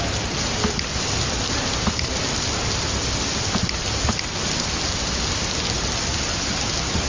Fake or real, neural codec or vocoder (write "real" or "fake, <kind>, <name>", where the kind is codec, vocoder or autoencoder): real